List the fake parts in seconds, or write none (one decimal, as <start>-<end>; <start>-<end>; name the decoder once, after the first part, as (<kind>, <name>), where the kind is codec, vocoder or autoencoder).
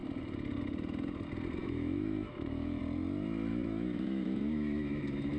1.6-2.8 (autoencoder, DAC-VAE); 3.5-5.4